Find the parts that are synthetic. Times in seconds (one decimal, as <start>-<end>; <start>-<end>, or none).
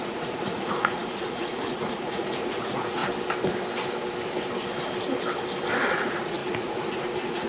0.0-3.0; 5.8-7.5